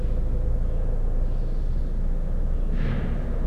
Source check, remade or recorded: recorded